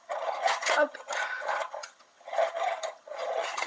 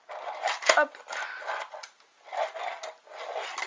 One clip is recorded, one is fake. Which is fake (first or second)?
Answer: first